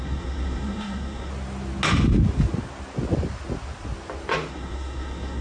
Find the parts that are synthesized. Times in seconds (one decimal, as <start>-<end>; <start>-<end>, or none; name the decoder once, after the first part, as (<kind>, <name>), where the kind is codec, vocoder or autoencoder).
0.0-1.3 (codec, SNAC); 4.5-5.4

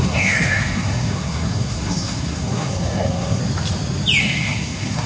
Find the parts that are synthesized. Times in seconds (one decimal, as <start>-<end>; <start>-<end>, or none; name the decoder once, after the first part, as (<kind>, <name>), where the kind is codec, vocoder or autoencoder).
0.0-3.4 (codec, SNAC); 4.2-5.1

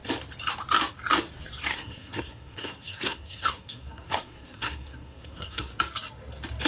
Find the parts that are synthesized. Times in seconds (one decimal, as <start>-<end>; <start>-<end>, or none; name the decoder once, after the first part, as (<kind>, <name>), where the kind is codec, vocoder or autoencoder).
1.7-5.7 (codec, SNAC)

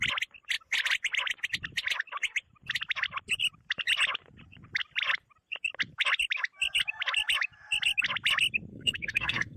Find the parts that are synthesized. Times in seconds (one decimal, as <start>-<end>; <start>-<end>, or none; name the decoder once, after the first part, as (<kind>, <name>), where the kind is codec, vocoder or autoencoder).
8.7-9.6 (codec, SNAC)

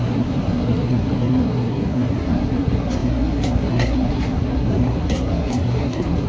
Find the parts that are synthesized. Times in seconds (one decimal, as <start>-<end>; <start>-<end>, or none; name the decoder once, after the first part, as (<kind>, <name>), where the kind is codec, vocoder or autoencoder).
0.0-6.3 (codec, SNAC)

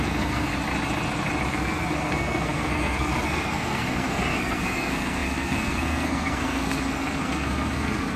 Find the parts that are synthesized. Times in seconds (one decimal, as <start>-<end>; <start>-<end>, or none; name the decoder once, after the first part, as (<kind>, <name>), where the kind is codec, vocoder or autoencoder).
0.0-0.5 (codec, SNAC); 1.5-8.2